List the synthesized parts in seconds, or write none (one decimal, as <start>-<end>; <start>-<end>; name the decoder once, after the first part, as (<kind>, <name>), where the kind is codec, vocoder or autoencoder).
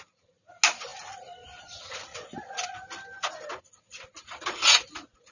none